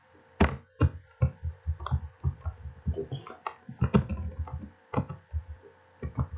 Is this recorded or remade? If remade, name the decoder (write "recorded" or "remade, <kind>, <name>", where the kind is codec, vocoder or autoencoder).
recorded